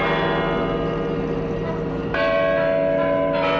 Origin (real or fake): real